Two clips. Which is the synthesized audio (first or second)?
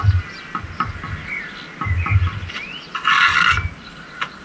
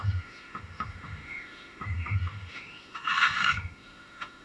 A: second